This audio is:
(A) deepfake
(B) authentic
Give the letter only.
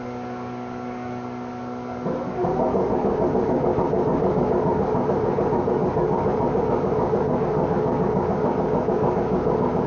A